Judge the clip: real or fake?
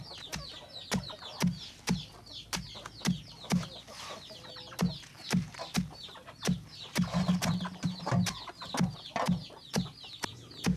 real